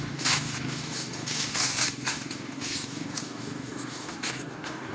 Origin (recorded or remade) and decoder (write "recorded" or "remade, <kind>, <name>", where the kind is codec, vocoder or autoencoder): remade, codec, DAC